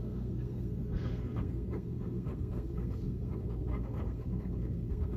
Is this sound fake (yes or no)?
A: yes